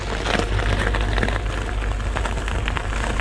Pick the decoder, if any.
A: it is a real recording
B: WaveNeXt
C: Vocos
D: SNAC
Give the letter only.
A